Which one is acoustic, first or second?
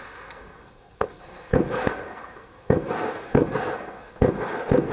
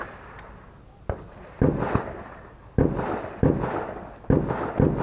second